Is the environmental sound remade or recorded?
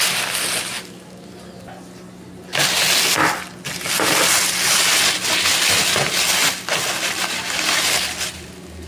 recorded